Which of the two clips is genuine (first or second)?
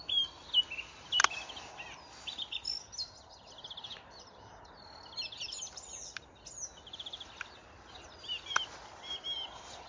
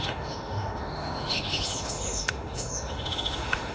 first